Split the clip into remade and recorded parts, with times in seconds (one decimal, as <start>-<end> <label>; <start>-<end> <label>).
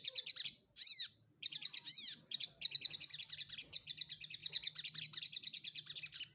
0.0-6.3 recorded